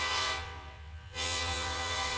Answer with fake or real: fake